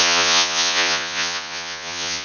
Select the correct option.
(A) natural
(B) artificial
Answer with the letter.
B